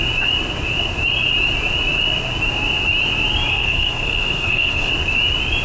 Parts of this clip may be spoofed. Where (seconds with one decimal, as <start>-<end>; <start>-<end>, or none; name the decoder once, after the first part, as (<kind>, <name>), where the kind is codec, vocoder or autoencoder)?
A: 3.5-4.9 (codec, SNAC)